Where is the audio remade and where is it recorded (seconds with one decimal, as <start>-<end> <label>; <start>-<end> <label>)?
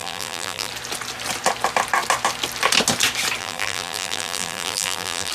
0.0-0.7 remade; 0.7-3.4 recorded; 3.4-5.3 remade